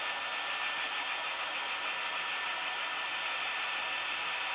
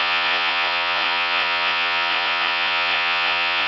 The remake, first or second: second